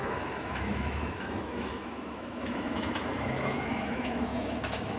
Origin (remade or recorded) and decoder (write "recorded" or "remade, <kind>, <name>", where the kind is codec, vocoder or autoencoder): remade, autoencoder, DAC-VAE